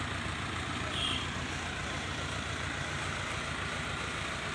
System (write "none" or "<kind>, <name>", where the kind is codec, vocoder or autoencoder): vocoder, BigVGAN v2